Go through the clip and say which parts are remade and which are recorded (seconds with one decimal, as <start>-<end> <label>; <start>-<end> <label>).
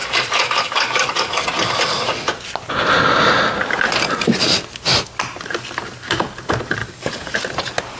0.0-1.4 remade; 1.4-6.8 recorded; 6.8-7.4 remade; 7.4-8.0 recorded